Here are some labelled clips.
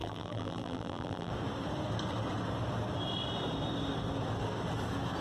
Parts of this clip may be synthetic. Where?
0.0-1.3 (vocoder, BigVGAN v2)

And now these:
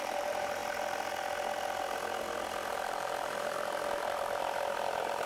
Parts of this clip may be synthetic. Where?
0.0-0.6 (vocoder, BigVGAN v2); 2.7-5.3

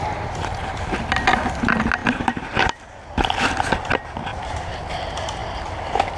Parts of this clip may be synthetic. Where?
2.0-2.9 (vocoder, BigVGAN v2); 4.3-4.8

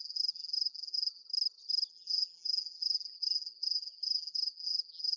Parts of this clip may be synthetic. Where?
0.0-1.2 (vocoder, BigVGAN v2); 1.9-5.2